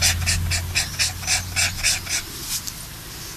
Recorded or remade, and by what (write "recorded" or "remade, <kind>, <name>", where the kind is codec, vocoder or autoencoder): recorded